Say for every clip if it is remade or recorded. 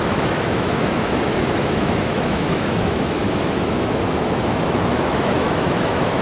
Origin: remade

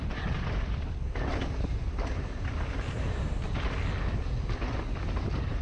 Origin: recorded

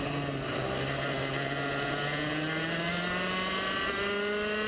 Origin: recorded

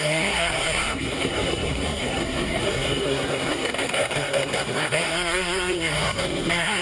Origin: remade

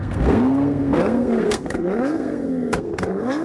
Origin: remade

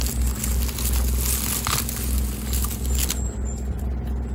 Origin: recorded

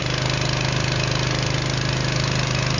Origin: recorded